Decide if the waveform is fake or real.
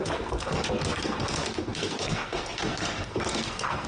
fake